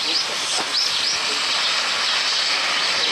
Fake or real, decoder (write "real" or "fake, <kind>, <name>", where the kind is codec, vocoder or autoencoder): real